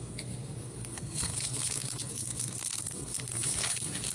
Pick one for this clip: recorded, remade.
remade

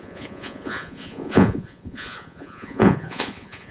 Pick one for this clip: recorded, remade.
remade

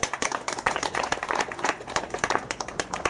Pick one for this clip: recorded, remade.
remade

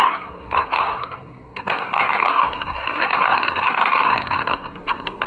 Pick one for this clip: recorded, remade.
remade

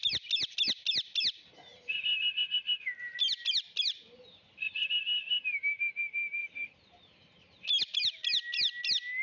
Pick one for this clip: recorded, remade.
recorded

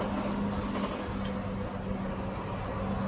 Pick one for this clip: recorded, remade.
recorded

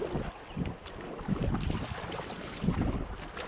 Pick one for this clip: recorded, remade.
recorded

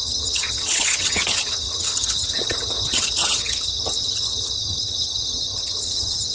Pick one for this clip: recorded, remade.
remade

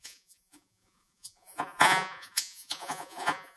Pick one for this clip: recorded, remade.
remade